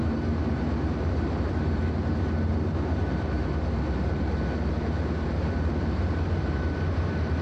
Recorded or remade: remade